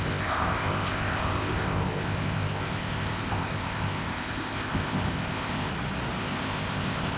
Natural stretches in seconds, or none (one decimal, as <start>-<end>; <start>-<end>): 5.7-6.2